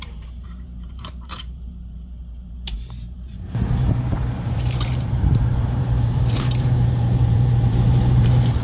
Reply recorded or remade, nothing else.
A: remade